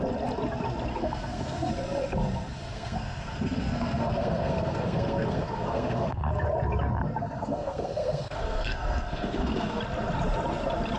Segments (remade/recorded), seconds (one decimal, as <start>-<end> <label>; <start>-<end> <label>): 0.0-0.9 recorded; 0.9-1.7 remade; 1.7-2.5 recorded; 2.5-6.3 remade; 6.3-7.2 recorded; 7.2-9.8 remade; 9.8-11.0 recorded